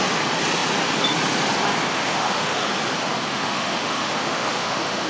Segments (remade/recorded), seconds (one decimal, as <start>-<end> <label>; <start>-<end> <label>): 0.0-1.9 recorded; 1.9-2.7 remade; 2.7-3.3 recorded; 3.3-5.1 remade